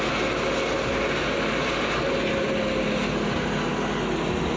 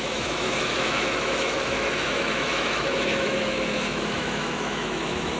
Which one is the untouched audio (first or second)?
first